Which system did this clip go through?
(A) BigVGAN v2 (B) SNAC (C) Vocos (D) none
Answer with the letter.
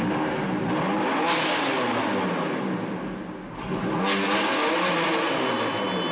D